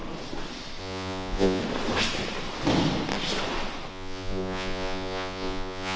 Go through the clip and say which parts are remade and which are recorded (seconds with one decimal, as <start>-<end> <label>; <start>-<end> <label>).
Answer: 0.0-0.8 recorded; 0.8-1.6 remade; 1.6-3.9 recorded; 3.9-6.0 remade